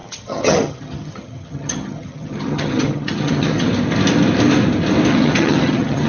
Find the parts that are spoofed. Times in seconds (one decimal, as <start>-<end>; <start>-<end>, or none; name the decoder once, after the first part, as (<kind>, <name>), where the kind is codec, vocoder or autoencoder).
0.0-3.7 (vocoder, HiFi-GAN); 5.1-6.1